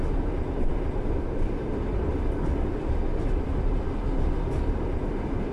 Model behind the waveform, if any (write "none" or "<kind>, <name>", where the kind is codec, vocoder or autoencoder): none